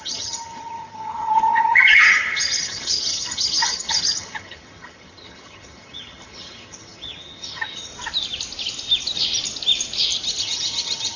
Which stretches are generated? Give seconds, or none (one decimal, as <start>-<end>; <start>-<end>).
0.0-7.9; 10.4-11.2